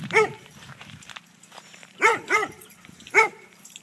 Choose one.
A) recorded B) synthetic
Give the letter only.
B